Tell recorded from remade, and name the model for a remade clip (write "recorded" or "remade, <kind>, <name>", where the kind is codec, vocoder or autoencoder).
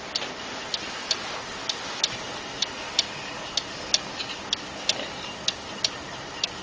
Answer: recorded